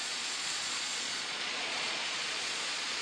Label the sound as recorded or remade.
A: remade